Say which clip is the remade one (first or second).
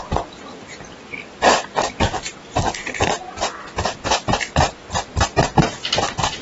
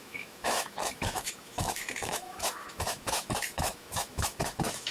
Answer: second